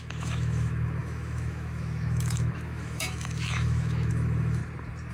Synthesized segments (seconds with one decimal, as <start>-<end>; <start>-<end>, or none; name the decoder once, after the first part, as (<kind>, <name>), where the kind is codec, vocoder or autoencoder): 0.0-4.6 (autoencoder, DAC-VAE)